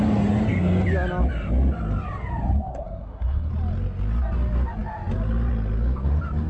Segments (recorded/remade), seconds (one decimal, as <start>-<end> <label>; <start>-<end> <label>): 0.0-2.7 recorded; 2.7-3.5 remade; 3.5-6.5 recorded